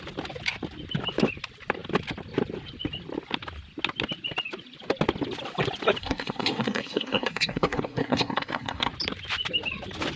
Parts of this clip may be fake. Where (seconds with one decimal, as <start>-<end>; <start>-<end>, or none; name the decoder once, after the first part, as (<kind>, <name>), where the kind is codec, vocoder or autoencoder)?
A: 6.0-8.9 (codec, SNAC)

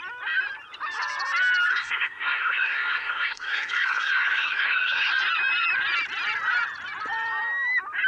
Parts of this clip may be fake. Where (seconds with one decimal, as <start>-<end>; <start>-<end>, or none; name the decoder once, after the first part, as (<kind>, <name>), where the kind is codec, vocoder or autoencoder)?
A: 1.7-5.1 (codec, SNAC)

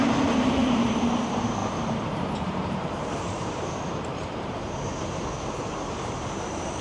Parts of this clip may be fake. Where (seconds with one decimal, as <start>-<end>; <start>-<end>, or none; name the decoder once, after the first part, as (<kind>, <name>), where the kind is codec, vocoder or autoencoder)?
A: 0.0-6.8 (vocoder, BigVGAN v2)

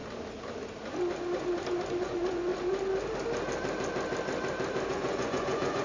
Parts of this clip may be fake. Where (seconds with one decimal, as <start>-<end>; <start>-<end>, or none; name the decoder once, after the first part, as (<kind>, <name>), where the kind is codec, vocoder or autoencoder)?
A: 2.0-2.5 (vocoder, Vocos); 4.9-5.8

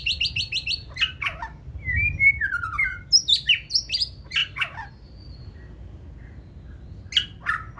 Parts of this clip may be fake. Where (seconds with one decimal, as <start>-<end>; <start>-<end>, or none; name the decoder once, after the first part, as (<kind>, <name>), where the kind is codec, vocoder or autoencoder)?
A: none

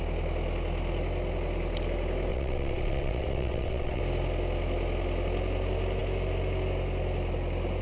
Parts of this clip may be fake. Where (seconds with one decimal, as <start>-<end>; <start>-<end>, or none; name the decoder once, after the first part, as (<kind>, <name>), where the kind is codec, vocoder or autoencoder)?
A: 2.3-4.0 (vocoder, WaveNeXt)

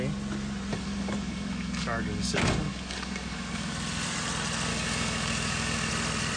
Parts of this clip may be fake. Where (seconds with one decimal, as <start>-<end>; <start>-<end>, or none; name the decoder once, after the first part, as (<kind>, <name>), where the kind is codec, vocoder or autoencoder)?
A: 0.7-3.7 (codec, DAC); 4.7-5.9

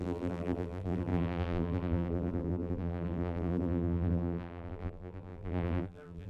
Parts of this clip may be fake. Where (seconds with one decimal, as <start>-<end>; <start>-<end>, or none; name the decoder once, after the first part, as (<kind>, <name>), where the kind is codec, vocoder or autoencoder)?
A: 0.0-6.3 (vocoder, BigVGAN v2)